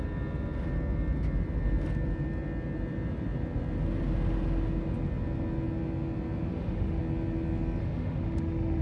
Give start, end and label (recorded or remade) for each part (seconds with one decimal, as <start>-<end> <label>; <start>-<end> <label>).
0.0-6.5 recorded; 6.5-7.0 remade; 7.0-7.8 recorded; 7.8-8.8 remade